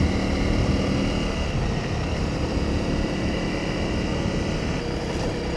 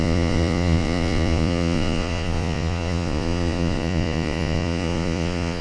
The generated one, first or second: second